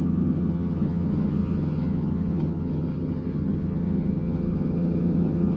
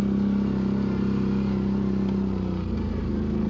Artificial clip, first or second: first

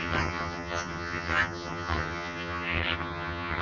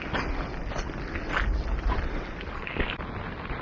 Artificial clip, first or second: first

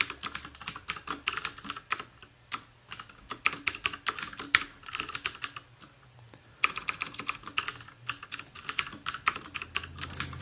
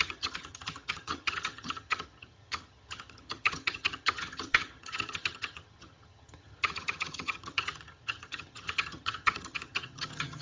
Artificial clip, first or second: second